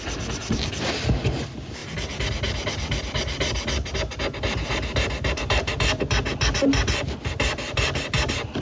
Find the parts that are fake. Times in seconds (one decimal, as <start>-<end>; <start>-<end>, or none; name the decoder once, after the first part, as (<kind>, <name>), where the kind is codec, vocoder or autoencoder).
none